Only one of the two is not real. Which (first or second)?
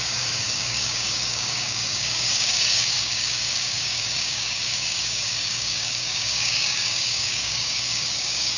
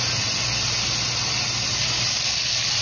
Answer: first